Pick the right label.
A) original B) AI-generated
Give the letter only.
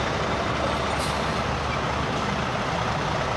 A